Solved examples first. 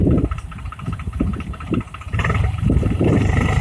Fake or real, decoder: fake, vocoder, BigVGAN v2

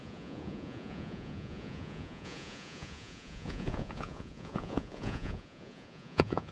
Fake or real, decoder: fake, vocoder, Vocos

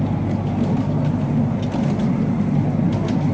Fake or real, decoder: real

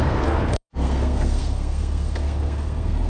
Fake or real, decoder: fake, codec, SNAC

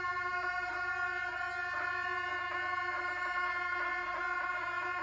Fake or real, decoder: real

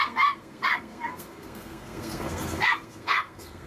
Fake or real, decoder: fake, codec, SNAC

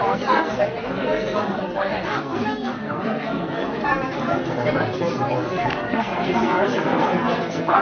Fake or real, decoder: fake, codec, SNAC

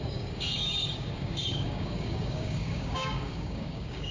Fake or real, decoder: fake, codec, DAC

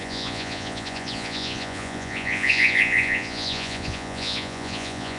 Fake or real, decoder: fake, vocoder, Vocos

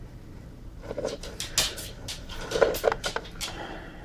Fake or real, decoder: real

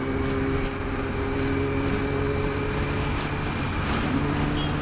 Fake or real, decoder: real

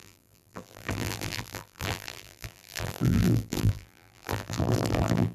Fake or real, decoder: fake, vocoder, BigVGAN v2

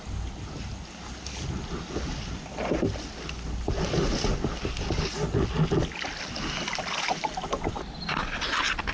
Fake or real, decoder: real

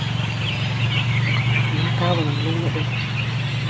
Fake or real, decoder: real